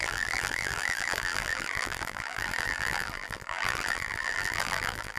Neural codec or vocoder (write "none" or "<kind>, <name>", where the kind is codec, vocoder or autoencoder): vocoder, BigVGAN v2